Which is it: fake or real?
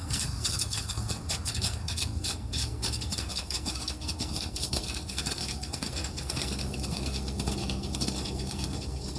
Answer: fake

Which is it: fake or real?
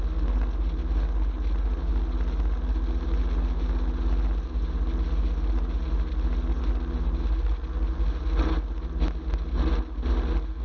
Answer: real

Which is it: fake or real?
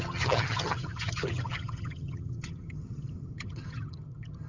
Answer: fake